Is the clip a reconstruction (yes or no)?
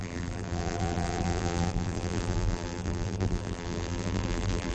yes